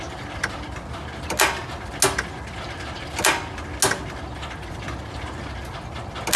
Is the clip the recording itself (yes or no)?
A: yes